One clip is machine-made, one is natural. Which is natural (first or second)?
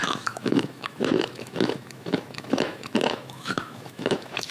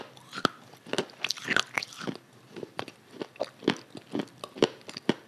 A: second